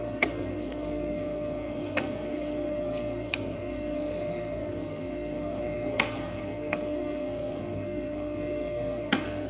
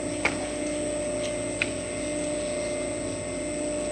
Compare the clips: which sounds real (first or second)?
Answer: second